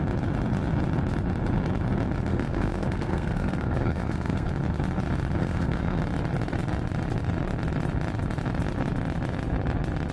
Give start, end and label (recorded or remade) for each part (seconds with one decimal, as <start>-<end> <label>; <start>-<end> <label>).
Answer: 0.0-2.3 recorded; 2.3-4.5 remade; 4.5-5.4 recorded; 5.4-6.0 remade; 6.0-10.1 recorded